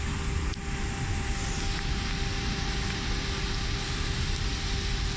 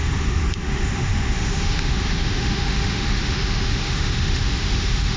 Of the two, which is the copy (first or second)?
second